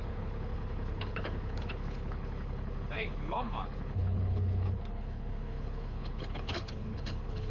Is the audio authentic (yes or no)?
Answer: no